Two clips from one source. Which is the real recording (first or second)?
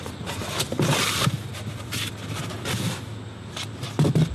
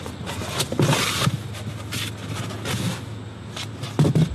second